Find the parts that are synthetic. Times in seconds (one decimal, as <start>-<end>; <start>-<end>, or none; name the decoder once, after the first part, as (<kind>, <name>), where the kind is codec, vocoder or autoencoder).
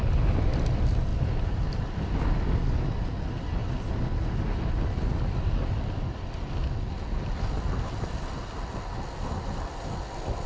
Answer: none